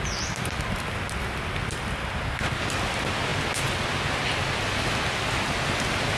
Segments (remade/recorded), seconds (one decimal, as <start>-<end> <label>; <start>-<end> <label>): 0.0-6.2 recorded